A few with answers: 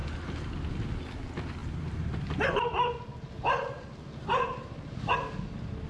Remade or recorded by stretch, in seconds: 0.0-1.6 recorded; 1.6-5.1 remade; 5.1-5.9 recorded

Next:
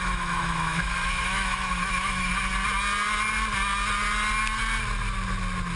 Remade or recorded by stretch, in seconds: 0.0-2.3 remade; 2.3-5.8 recorded

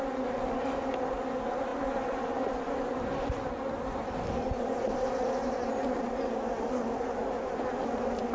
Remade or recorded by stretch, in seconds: 0.0-8.3 recorded

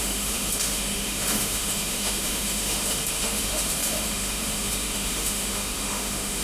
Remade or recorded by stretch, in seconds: 0.0-6.4 remade

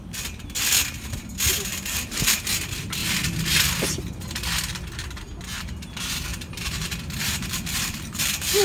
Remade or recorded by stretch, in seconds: 0.0-1.7 recorded; 1.7-2.4 remade; 2.4-6.3 recorded; 6.3-8.6 remade

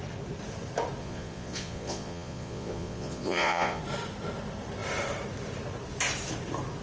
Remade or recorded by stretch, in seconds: 0.0-1.0 recorded; 1.0-3.8 remade; 3.8-6.8 recorded

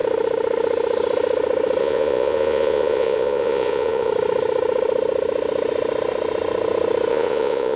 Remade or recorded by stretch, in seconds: 0.0-1.8 recorded; 1.8-4.1 remade; 4.1-7.1 recorded; 7.1-7.8 remade